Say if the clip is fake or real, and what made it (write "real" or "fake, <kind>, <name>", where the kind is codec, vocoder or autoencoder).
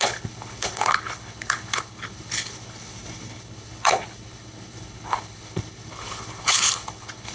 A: fake, codec, HILCodec